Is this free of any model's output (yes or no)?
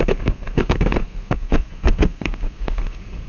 no